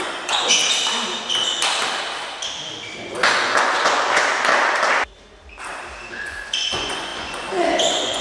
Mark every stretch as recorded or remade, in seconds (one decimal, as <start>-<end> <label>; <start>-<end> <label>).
0.0-0.6 remade; 0.6-3.0 recorded; 3.0-4.5 remade; 4.5-6.1 recorded; 6.1-8.2 remade